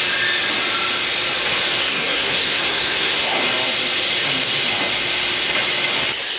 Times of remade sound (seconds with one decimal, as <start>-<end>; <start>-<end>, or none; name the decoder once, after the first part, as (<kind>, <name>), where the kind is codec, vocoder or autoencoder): 1.8-3.4 (codec, SNAC)

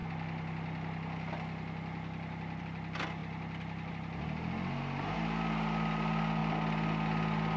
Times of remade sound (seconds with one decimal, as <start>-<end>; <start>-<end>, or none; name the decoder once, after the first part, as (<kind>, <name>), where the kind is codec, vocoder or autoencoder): none

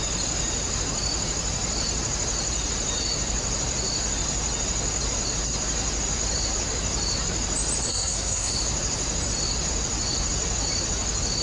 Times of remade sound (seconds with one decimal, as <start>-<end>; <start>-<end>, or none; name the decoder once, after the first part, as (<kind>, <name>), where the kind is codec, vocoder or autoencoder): 7.9-8.5 (codec, SNAC)

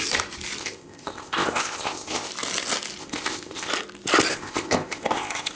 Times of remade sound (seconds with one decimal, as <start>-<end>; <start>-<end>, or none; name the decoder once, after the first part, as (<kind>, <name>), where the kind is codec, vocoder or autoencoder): 0.6-2.3 (codec, ZipCodec); 3.0-3.7; 4.3-5.6